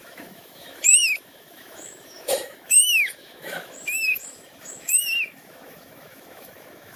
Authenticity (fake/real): fake